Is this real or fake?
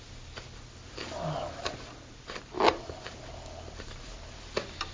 real